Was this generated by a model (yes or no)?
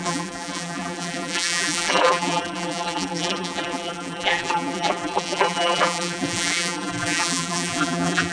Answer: yes